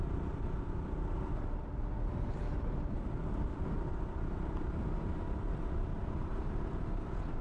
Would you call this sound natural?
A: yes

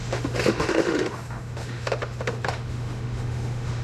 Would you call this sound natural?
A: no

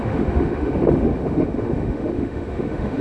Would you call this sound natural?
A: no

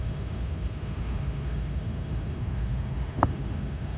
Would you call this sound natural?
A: no